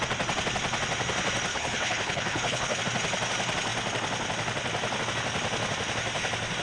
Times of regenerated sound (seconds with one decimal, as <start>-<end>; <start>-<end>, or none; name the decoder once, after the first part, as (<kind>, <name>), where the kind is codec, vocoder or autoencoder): 1.5-2.8 (codec, HILCodec)